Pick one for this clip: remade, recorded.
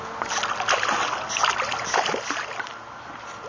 recorded